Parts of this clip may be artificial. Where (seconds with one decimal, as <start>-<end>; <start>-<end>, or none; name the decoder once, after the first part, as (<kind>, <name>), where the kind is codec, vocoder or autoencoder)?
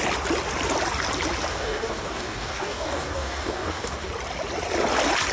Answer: 1.5-4.1 (codec, DAC)